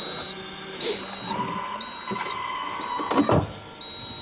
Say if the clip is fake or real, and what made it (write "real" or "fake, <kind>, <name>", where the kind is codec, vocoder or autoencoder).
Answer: real